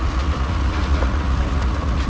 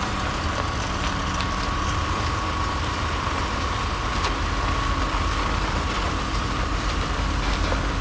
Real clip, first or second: second